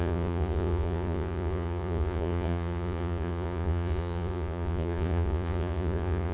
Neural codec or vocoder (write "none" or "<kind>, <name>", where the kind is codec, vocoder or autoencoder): vocoder, Vocos